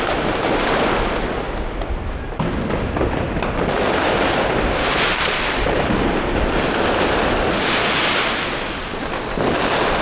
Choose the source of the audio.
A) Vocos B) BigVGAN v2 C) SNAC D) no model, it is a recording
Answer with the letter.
D